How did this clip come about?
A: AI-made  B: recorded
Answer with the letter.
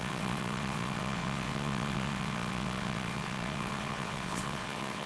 A